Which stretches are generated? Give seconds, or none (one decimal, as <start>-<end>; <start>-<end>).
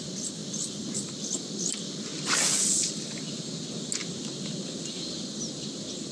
none